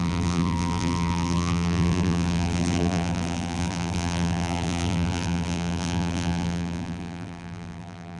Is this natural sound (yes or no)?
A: no